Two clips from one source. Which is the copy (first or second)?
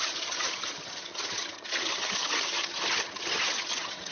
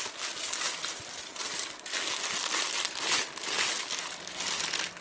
first